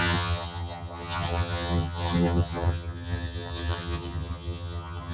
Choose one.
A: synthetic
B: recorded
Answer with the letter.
A